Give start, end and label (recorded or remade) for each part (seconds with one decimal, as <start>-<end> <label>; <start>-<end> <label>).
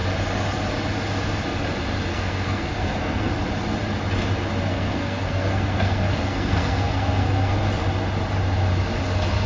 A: 0.0-2.1 recorded; 2.1-3.3 remade; 3.3-4.7 recorded; 4.7-7.6 remade; 7.6-9.5 recorded